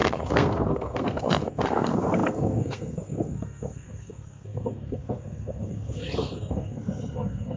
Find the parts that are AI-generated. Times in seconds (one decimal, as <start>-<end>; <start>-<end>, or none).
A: 0.0-7.6